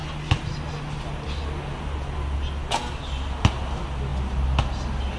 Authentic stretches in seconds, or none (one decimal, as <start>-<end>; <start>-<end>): 0.0-5.2